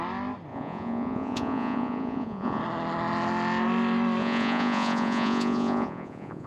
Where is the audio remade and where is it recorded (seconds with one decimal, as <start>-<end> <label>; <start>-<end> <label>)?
0.0-0.5 recorded; 0.5-2.6 remade; 2.6-4.2 recorded; 4.2-6.5 remade

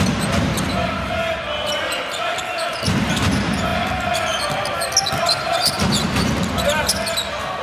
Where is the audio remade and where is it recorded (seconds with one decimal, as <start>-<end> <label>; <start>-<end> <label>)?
0.0-7.6 recorded